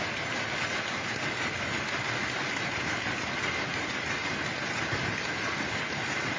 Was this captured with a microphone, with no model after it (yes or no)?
yes